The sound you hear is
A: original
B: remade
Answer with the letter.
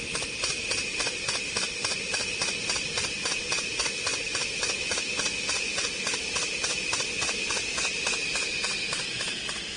A